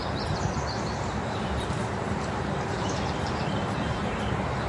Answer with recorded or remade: remade